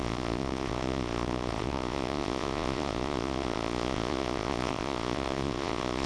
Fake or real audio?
fake